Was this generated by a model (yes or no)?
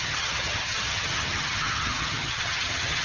yes